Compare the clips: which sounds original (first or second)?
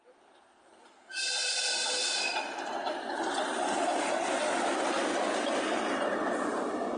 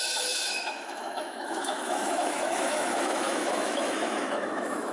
first